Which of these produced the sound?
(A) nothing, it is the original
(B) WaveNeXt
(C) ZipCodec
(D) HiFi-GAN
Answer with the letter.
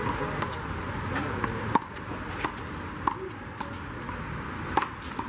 A